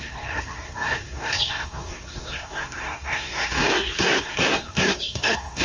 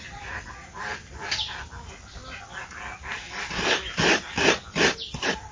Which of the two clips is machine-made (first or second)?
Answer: first